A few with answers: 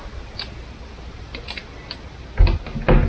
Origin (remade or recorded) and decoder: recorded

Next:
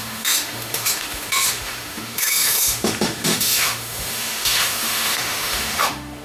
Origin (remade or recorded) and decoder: remade, autoencoder, DAC-VAE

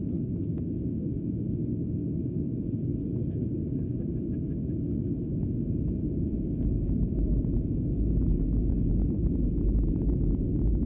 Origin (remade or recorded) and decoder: remade, autoencoder, DAC-VAE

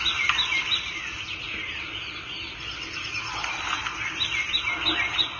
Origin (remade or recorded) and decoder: recorded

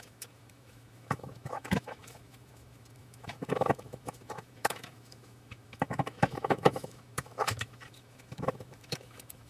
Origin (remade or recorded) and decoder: remade, autoencoder, DAC-VAE